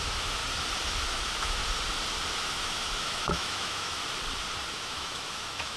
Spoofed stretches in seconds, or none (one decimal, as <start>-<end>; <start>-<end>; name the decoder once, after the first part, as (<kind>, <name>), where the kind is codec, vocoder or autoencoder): 0.0-0.4 (autoencoder, DAC-VAE); 1.1-1.6; 2.4-4.0; 4.7-5.8